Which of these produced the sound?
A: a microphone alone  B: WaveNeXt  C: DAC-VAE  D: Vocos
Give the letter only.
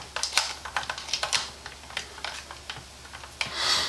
A